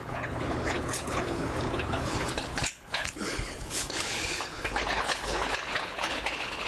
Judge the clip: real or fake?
fake